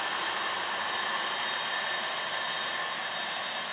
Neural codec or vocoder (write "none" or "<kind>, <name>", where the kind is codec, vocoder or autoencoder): none